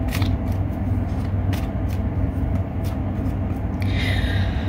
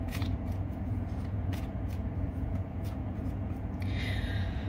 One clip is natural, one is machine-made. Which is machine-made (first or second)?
second